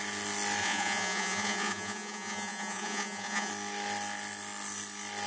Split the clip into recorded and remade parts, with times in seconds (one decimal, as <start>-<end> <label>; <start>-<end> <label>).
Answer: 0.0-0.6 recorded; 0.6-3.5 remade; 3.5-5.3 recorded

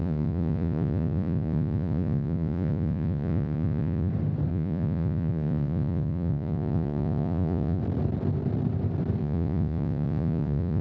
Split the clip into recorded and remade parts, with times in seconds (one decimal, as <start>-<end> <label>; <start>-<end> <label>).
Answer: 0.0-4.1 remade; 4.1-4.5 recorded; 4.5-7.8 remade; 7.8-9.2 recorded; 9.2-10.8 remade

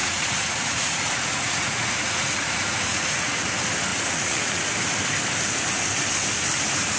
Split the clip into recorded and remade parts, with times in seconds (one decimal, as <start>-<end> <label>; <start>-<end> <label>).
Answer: 0.0-3.5 remade; 3.5-3.9 recorded; 3.9-4.7 remade; 4.7-7.0 recorded

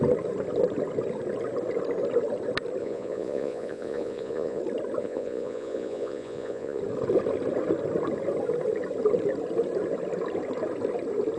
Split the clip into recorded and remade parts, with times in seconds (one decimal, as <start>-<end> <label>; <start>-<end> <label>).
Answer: 0.0-2.8 recorded; 2.8-4.6 remade; 4.6-5.0 recorded; 5.0-6.8 remade; 6.8-11.4 recorded

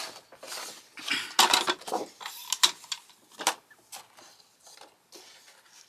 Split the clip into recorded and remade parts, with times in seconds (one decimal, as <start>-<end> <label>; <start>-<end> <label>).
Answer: 0.0-5.9 recorded

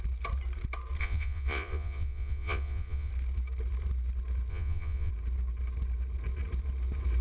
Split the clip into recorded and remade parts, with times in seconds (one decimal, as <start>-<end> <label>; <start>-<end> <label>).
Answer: 0.0-1.0 recorded; 1.0-3.1 remade; 3.1-4.5 recorded; 4.5-5.1 remade; 5.1-7.2 recorded

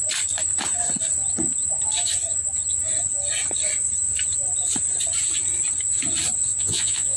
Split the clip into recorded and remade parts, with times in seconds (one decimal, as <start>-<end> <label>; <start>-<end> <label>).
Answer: 0.0-6.5 recorded; 6.5-7.2 remade